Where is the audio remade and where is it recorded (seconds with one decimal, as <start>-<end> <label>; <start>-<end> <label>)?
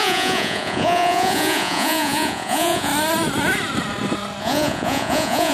0.0-2.9 remade; 2.9-4.4 recorded; 4.4-5.5 remade